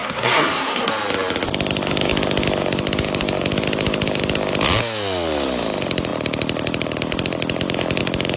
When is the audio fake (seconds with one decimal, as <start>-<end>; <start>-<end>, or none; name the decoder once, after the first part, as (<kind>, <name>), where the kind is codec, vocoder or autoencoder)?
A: 0.0-0.9 (codec, SNAC)